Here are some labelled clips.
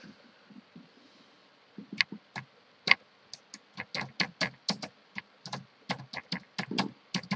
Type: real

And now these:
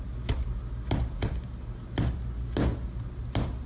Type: real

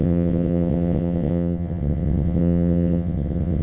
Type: fake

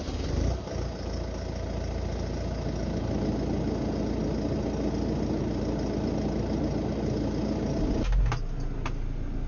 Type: real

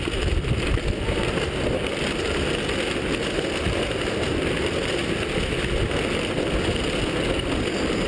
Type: real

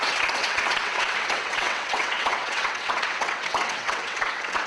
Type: fake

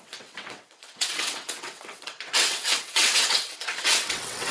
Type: fake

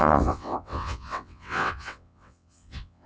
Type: fake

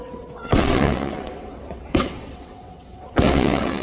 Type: fake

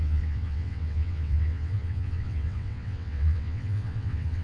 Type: fake